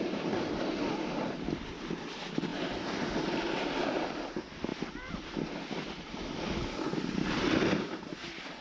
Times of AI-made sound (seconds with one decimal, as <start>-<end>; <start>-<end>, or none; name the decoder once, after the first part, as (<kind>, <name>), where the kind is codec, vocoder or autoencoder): none